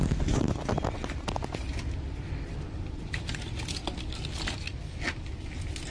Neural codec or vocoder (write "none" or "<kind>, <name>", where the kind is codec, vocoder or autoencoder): none